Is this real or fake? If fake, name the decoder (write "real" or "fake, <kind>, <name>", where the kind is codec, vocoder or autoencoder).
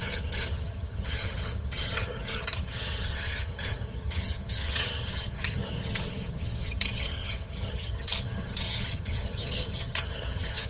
fake, vocoder, HiFi-GAN